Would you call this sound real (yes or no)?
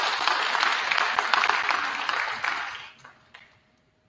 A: yes